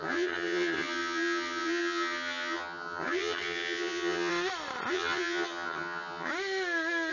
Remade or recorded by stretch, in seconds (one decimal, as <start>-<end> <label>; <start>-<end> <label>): 0.0-4.3 remade; 4.3-4.9 recorded; 4.9-6.3 remade; 6.3-7.1 recorded

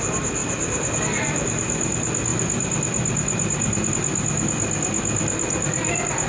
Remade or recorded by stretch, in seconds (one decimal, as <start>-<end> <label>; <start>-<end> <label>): 0.0-6.3 recorded